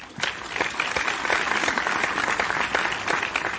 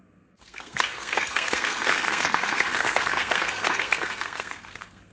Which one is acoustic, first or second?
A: first